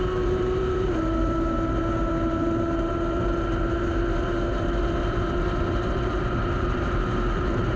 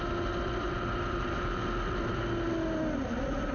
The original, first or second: second